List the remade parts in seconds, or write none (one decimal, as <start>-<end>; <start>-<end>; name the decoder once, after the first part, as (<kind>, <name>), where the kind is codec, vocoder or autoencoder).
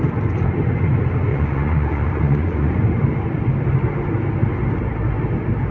1.3-2.7 (vocoder, Vocos)